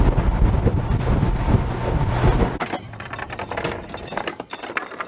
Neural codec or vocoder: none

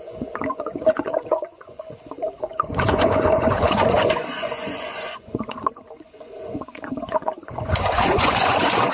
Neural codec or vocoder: vocoder, Vocos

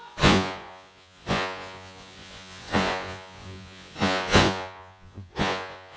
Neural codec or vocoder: vocoder, Vocos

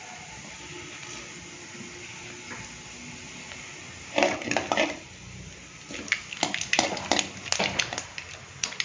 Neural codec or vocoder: none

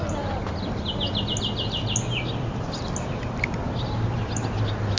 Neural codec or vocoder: none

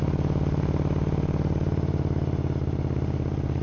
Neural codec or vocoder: none